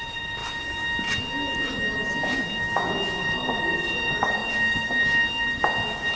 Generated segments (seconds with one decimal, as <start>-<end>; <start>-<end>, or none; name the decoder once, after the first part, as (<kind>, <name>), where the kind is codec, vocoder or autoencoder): none